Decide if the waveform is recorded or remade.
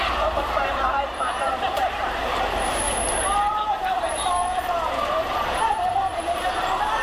remade